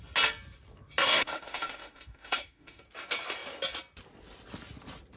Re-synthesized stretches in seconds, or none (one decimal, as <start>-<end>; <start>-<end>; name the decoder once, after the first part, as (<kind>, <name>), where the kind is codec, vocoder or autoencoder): 1.0-2.8 (autoencoder, DAC-VAE)